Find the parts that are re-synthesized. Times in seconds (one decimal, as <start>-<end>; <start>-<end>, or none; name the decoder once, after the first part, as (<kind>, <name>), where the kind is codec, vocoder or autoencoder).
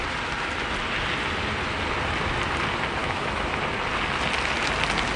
3.0-3.6 (autoencoder, DAC-VAE)